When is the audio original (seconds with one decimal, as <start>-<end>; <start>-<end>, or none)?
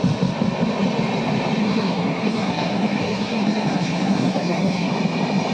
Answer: 0.0-1.6; 4.9-5.5